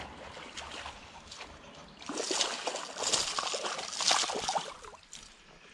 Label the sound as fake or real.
real